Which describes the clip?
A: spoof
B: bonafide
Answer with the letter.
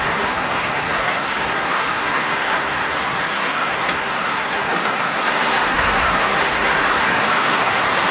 A